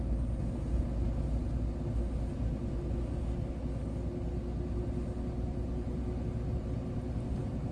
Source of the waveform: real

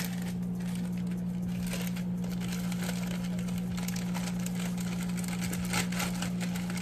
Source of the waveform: real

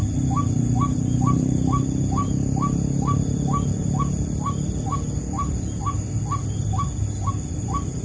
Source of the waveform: real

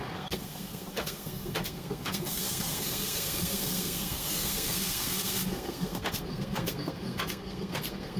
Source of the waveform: fake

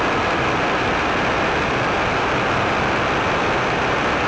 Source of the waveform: real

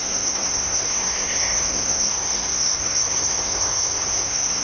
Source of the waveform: fake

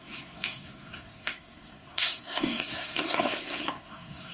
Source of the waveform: fake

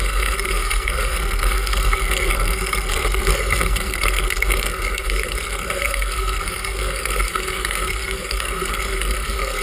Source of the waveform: fake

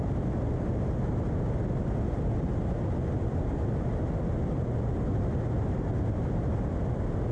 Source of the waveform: real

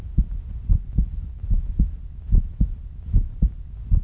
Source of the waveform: real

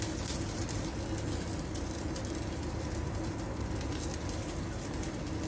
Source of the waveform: real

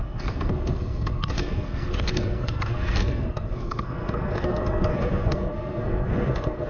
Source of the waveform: fake